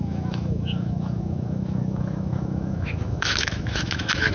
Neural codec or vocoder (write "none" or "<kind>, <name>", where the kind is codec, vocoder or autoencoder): autoencoder, DAC-VAE